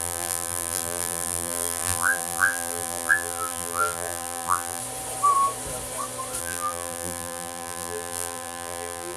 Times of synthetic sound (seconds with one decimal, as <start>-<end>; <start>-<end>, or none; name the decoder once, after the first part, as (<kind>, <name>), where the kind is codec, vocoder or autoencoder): 0.0-4.8 (vocoder, BigVGAN v2); 6.4-9.2